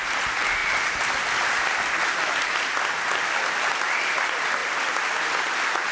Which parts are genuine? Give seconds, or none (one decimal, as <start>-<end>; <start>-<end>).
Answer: 0.0-0.6; 2.0-4.6